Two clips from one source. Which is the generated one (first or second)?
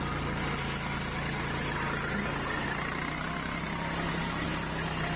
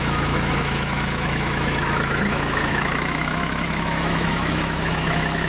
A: second